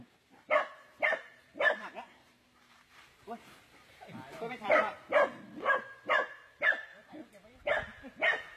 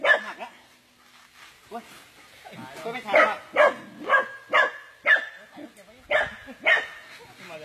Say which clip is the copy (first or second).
first